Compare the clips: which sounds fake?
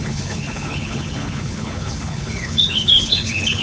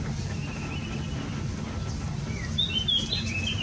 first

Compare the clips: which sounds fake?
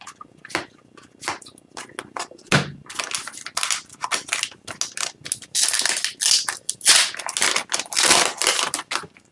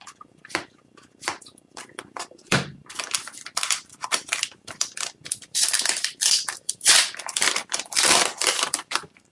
second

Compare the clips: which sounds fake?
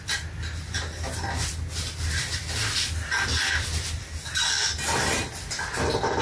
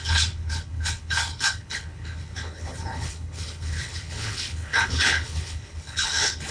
second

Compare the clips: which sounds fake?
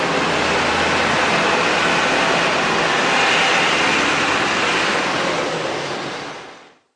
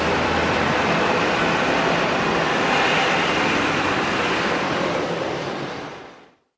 second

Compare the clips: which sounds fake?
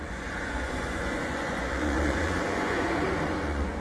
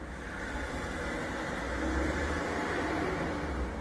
first